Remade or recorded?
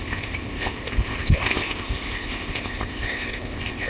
remade